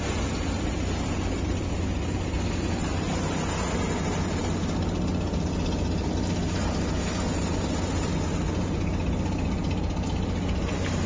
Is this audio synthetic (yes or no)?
no